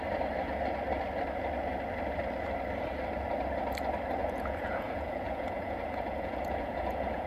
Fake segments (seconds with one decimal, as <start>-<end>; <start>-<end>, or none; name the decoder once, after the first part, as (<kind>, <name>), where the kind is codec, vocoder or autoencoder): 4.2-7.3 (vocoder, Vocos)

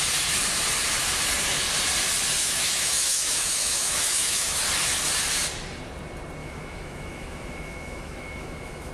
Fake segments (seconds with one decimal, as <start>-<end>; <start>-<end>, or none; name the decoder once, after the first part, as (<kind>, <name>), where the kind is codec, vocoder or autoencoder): 2.4-4.6 (autoencoder, DAC-VAE); 6.4-8.9

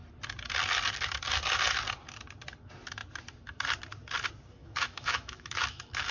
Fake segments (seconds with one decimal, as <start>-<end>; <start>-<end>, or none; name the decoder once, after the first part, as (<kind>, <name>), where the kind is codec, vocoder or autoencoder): 4.6-6.1 (autoencoder, DAC-VAE)